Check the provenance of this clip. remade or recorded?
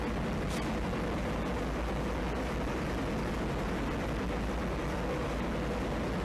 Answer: recorded